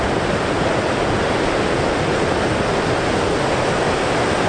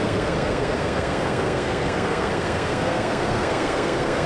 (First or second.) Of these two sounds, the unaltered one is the first